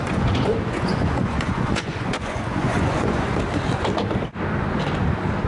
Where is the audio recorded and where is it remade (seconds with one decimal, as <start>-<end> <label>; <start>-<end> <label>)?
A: 0.0-3.3 remade; 3.3-5.5 recorded